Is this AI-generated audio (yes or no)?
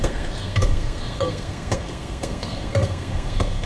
yes